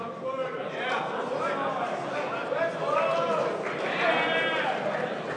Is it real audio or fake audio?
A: real